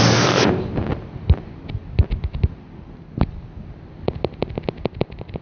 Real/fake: real